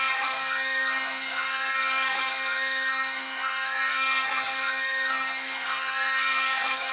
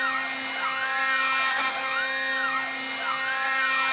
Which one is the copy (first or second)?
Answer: first